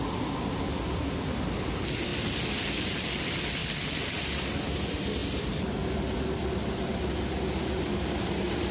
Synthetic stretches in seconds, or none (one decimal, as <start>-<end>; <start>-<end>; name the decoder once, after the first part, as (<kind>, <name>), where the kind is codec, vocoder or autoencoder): none